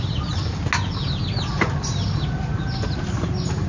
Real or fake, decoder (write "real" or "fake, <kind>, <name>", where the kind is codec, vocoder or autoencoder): real